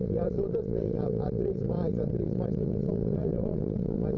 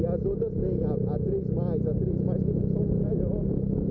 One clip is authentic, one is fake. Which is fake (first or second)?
first